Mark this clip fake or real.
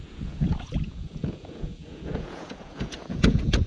fake